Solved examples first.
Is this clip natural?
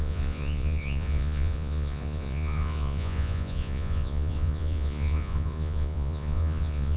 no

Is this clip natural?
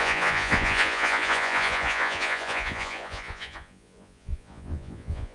no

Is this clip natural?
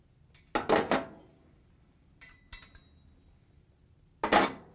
yes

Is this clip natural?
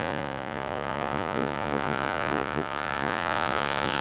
no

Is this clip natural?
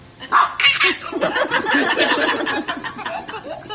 yes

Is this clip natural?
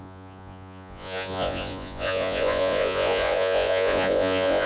no